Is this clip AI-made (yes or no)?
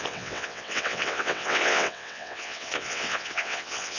yes